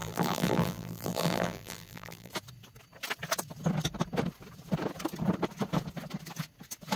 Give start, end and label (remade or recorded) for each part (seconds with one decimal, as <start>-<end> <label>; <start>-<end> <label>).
0.0-2.3 remade; 2.3-7.0 recorded